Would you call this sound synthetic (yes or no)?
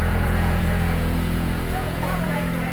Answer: yes